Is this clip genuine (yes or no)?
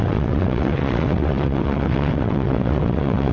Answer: no